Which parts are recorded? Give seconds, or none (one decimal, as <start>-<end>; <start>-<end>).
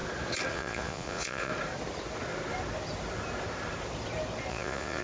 0.0-0.5; 1.5-4.5